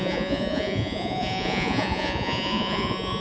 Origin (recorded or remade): remade